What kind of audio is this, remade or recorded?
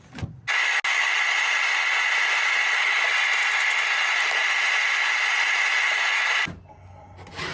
recorded